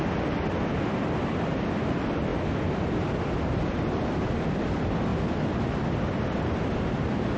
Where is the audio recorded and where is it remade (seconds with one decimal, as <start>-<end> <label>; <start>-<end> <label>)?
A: 0.0-7.4 recorded